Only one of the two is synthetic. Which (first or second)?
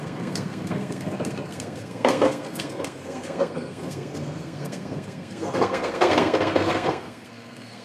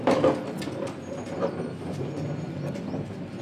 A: first